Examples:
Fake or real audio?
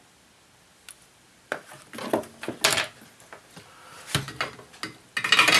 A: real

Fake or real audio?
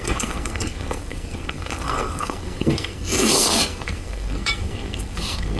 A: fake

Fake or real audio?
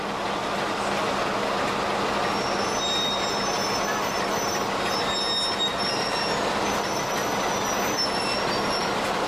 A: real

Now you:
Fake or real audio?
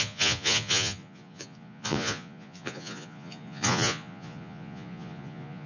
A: fake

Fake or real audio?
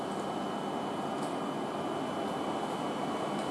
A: real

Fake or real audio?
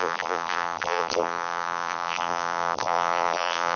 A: fake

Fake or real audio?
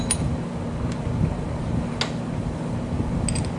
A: real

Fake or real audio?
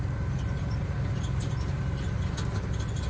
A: real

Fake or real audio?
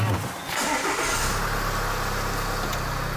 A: real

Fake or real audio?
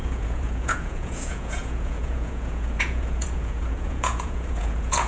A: fake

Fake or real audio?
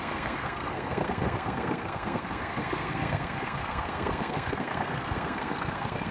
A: fake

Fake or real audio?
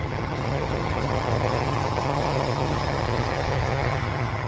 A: fake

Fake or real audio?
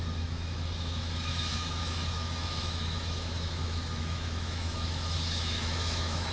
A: fake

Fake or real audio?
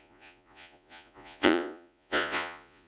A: fake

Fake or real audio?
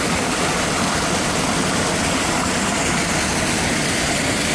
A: real